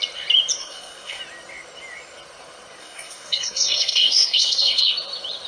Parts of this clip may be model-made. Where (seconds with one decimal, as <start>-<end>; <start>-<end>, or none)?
0.6-1.2; 2.8-4.9